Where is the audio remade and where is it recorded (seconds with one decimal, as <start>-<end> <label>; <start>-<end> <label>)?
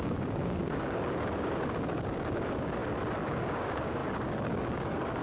0.0-2.8 remade; 2.8-3.3 recorded; 3.3-5.2 remade